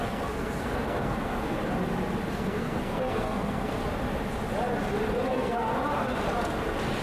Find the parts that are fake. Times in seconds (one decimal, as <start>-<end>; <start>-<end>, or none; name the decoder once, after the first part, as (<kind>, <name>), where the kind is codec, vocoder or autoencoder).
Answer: 0.0-1.6 (codec, SNAC); 2.3-3.8; 5.3-5.7

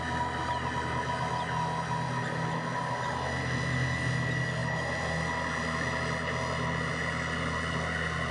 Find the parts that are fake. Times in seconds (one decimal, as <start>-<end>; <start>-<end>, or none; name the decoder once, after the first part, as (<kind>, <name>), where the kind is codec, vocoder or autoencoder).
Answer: none

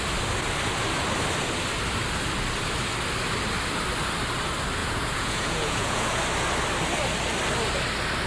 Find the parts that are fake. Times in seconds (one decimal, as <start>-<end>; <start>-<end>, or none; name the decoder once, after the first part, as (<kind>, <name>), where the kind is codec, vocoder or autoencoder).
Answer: 4.8-6.2 (vocoder, Vocos)

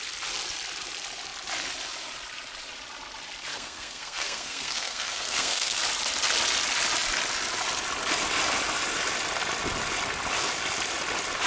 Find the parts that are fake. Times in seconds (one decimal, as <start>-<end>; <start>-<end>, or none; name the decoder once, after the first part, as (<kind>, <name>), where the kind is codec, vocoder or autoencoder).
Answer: 3.5-5.8 (codec, SNAC)

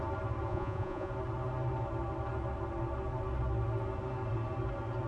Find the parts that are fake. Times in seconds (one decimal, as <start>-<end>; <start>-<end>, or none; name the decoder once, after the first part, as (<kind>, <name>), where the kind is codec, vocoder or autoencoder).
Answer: 0.5-1.1 (vocoder, Vocos)